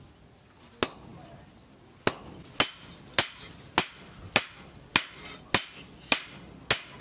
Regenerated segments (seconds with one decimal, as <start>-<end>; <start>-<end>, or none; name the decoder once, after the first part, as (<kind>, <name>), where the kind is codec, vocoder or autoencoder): none